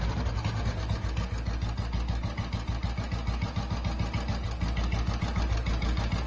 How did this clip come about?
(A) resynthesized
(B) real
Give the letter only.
B